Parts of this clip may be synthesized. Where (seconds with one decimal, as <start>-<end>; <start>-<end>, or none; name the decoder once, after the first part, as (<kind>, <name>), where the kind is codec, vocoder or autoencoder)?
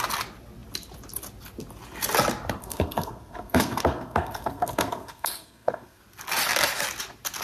2.6-6.0 (codec, SNAC)